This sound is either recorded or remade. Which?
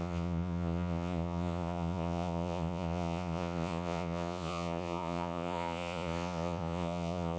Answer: remade